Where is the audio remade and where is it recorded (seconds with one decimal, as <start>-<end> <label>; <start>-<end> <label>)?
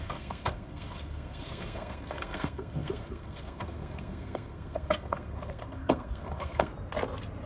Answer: 0.0-6.7 remade; 6.7-7.5 recorded